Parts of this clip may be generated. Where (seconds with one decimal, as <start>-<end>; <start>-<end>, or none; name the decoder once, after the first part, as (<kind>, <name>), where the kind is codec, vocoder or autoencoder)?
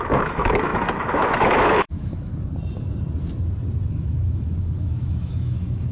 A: 0.0-2.3 (autoencoder, DAC-VAE); 3.9-5.9